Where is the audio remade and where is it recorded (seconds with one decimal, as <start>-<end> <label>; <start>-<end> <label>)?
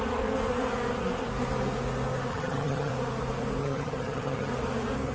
0.0-2.3 recorded; 2.3-2.9 remade; 2.9-3.6 recorded; 3.6-4.5 remade; 4.5-5.1 recorded